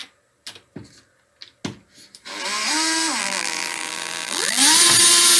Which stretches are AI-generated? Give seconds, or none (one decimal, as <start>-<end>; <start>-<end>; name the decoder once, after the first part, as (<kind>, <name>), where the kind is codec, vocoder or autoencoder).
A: 3.2-4.6 (vocoder, BigVGAN v2)